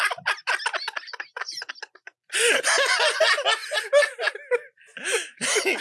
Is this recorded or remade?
recorded